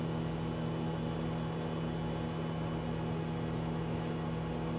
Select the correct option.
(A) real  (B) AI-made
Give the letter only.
A